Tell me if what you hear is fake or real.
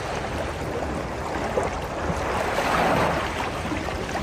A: real